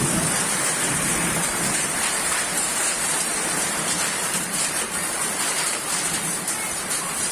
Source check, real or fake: fake